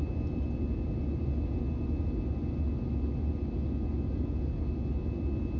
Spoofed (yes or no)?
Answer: no